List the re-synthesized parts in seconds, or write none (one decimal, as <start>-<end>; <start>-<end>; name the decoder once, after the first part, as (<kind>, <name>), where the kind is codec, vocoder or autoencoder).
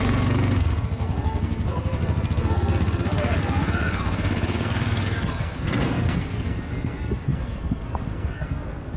0.0-9.0 (codec, SNAC)